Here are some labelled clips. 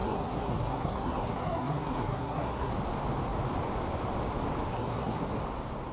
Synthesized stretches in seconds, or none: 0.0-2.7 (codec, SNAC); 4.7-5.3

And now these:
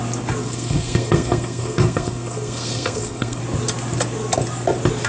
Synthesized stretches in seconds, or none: 0.4-3.4 (codec, SNAC)

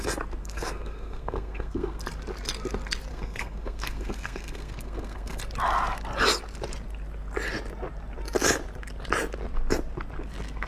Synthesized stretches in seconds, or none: 0.4-2.0 (codec, SNAC); 3.1-5.4